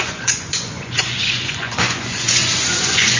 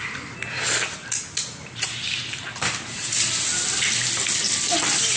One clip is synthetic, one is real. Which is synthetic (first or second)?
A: first